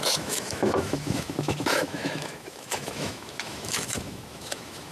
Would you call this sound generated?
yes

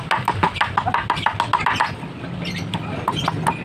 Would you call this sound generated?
no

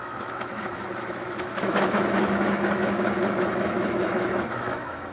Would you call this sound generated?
yes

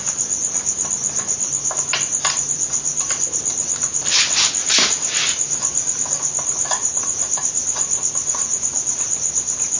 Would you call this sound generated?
no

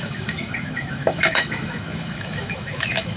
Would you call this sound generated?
yes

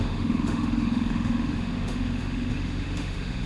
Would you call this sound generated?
yes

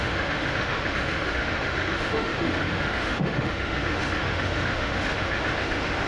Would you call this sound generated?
yes